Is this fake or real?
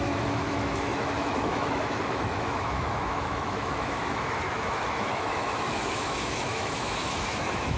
fake